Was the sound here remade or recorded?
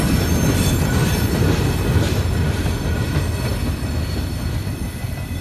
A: recorded